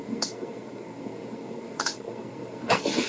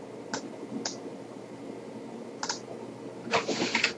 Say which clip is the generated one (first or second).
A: first